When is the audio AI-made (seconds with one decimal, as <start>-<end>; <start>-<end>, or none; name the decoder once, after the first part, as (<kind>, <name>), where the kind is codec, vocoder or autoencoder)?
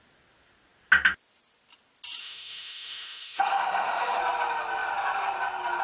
2.2-4.2 (autoencoder, DAC-VAE)